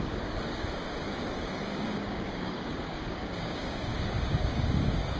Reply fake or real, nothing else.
fake